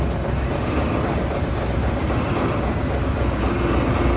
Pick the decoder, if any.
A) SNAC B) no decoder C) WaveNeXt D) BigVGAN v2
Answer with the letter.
B